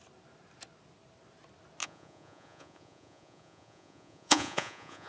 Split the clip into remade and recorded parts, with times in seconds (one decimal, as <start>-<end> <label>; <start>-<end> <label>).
0.0-1.8 recorded; 1.8-5.1 remade